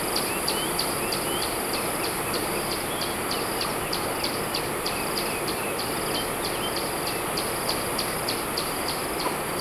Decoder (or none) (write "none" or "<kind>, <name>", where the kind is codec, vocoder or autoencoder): none